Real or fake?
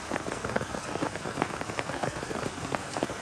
fake